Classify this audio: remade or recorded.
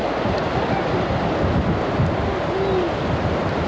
recorded